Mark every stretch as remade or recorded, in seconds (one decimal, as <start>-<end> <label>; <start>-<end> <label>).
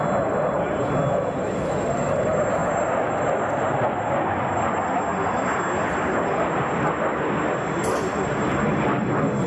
0.0-9.5 recorded